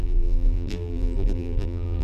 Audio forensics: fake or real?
fake